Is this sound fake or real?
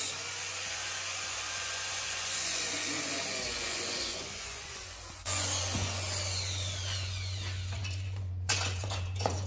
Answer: fake